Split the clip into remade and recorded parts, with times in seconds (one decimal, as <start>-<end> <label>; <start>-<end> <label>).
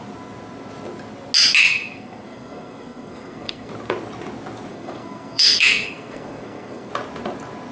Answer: 0.0-1.6 recorded; 1.6-3.7 remade; 3.7-4.7 recorded; 4.7-6.9 remade; 6.9-7.7 recorded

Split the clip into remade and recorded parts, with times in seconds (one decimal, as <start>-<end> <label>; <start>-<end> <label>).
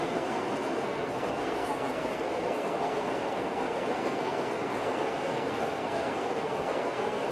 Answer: 0.0-7.3 remade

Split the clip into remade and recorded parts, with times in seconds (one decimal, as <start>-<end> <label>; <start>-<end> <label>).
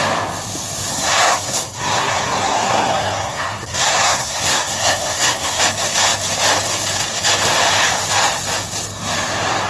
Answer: 0.0-0.9 recorded; 0.9-5.6 remade; 5.6-9.7 recorded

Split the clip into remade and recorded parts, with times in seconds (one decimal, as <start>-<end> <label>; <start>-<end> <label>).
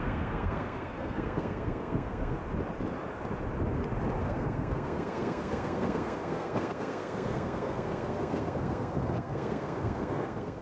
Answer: 0.0-2.4 remade; 2.4-4.2 recorded; 4.2-10.6 remade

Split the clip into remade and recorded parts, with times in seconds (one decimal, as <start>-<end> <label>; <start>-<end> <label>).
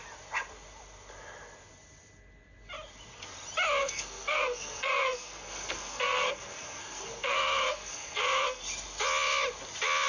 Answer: 0.0-3.8 recorded; 3.8-8.6 remade; 8.6-10.1 recorded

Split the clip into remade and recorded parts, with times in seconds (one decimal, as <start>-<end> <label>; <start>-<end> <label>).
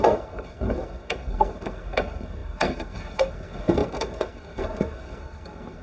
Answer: 0.0-5.8 remade